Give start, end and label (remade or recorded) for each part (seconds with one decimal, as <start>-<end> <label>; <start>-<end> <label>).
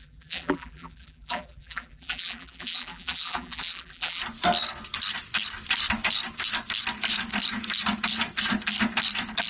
0.0-4.2 remade; 4.2-9.5 recorded